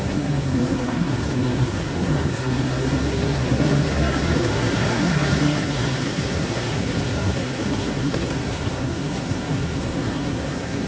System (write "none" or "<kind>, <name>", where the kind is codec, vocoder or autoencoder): codec, SNAC